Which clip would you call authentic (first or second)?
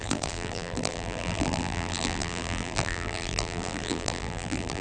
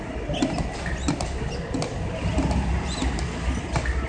second